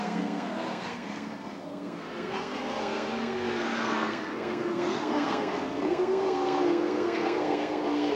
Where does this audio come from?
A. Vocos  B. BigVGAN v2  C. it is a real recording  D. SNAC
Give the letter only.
D